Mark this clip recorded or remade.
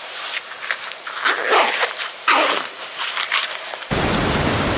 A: recorded